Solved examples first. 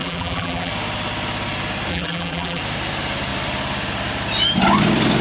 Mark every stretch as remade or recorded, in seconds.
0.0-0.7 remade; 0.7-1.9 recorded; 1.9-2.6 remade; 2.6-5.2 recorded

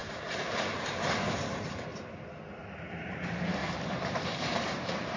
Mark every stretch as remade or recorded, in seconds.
0.0-1.9 remade; 1.9-2.5 recorded; 2.5-5.2 remade

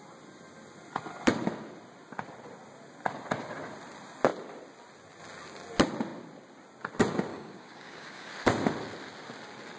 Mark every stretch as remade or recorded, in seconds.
0.0-7.3 recorded; 7.3-8.3 remade; 8.3-9.8 recorded

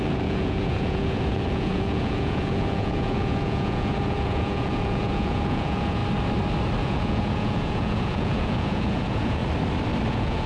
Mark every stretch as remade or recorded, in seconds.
0.0-6.0 remade; 6.0-6.8 recorded; 6.8-9.4 remade; 9.4-10.1 recorded; 10.1-10.5 remade

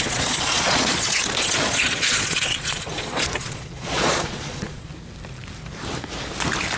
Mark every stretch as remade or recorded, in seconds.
0.0-4.9 remade; 4.9-6.8 recorded